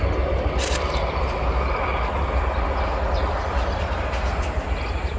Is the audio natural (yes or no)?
yes